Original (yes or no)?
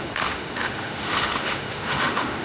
no